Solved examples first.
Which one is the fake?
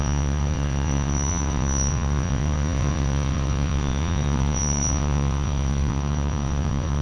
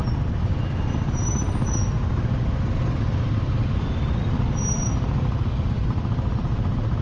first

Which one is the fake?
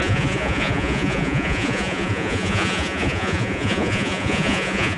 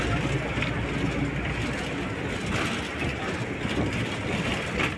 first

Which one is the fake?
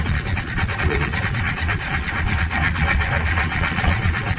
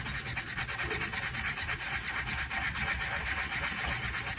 first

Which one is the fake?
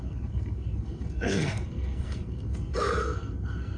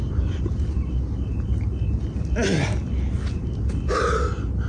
first